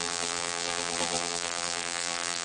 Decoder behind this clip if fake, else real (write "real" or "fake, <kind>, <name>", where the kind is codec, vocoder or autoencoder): fake, vocoder, BigVGAN v2